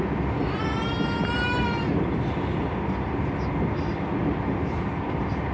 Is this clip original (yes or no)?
yes